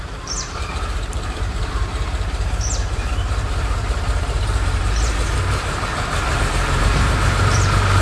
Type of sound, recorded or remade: remade